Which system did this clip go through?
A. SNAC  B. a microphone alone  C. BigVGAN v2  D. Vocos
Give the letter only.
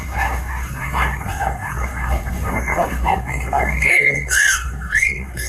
A